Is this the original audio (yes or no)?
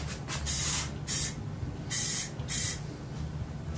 yes